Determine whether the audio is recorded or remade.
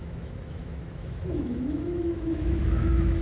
remade